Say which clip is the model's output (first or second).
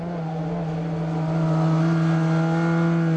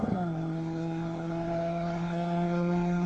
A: second